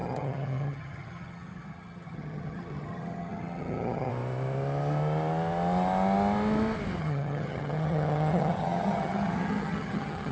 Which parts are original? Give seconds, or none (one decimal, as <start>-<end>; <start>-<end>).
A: 4.1-7.0